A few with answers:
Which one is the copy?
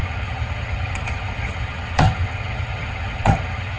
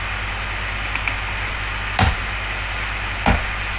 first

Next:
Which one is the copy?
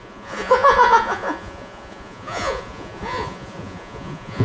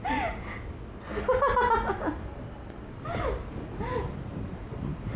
first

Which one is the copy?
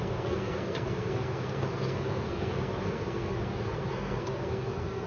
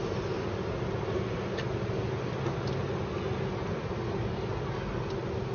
first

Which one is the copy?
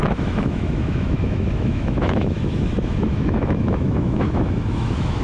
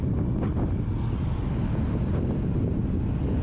first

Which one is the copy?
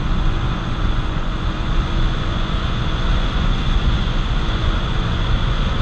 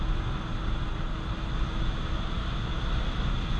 first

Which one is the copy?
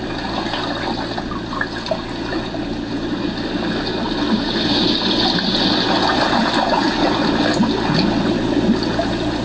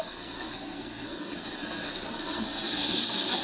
second